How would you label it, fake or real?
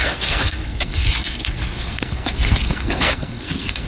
fake